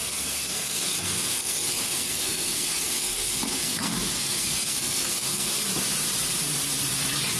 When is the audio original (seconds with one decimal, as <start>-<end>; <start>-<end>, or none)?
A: 5.6-7.4